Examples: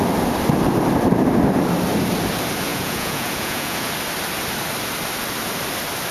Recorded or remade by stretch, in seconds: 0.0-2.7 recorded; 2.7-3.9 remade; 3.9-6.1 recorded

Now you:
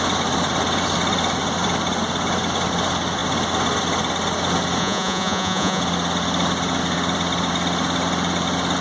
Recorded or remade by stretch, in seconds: 0.0-4.8 recorded; 4.8-5.8 remade; 5.8-8.8 recorded

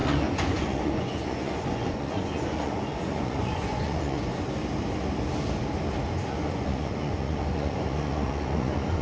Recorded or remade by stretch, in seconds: 0.0-4.3 remade; 4.3-6.3 recorded; 6.3-9.0 remade

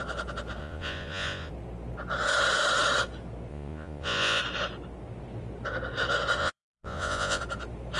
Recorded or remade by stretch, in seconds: 0.0-0.6 recorded; 0.6-1.5 remade; 1.5-3.5 recorded; 3.5-4.4 remade; 4.4-6.4 recorded; 6.4-7.4 remade; 7.4-8.0 recorded

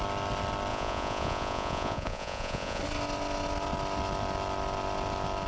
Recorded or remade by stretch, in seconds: 0.0-0.7 recorded; 0.7-2.8 remade; 2.8-5.5 recorded

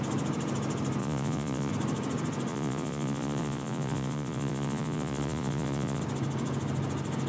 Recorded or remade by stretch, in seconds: 0.0-1.0 recorded; 1.0-1.7 remade; 1.7-2.5 recorded; 2.5-6.0 remade; 6.0-7.3 recorded